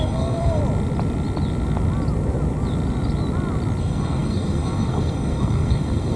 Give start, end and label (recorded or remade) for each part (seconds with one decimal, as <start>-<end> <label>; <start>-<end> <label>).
0.0-0.6 remade; 0.6-3.8 recorded; 3.8-6.2 remade